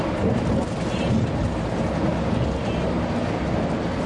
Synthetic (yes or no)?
no